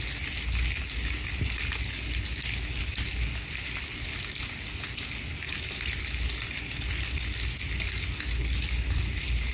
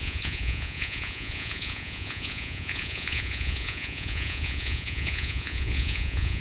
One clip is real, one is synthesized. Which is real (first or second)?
first